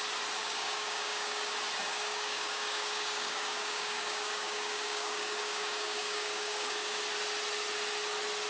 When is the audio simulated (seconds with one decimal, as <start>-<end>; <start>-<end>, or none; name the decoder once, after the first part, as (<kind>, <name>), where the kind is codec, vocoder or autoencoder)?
0.4-1.5 (codec, DAC); 1.9-7.0